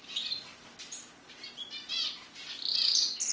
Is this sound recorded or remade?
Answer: recorded